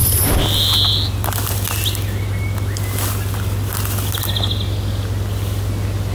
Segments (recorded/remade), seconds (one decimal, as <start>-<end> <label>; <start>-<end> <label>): 0.0-6.1 recorded